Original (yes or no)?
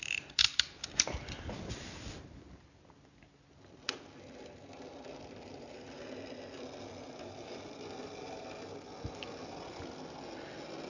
yes